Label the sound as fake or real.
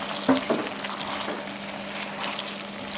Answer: real